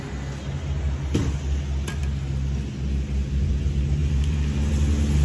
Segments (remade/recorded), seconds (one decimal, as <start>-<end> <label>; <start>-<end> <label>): 0.0-4.0 recorded; 4.0-4.7 remade; 4.7-5.2 recorded